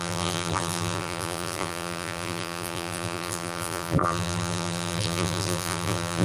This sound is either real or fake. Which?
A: fake